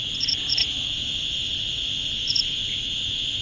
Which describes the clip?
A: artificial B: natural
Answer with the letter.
A